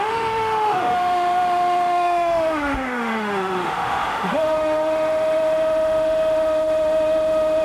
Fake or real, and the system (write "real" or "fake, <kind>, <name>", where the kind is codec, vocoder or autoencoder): fake, autoencoder, DAC-VAE